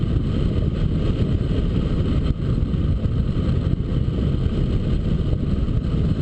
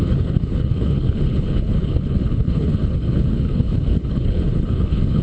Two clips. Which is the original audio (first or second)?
first